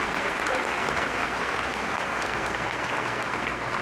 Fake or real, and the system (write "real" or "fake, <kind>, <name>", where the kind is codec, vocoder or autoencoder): fake, codec, SNAC